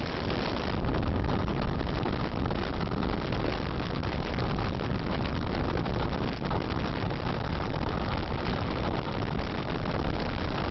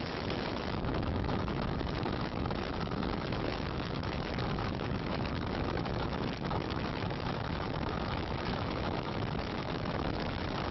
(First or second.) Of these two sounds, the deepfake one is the second